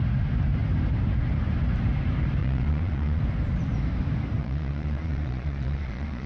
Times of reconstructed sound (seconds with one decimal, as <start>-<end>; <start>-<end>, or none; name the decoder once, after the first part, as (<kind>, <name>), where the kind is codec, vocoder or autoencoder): 2.4-3.2 (vocoder, Vocos); 4.4-6.3